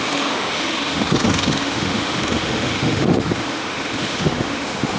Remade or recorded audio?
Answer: remade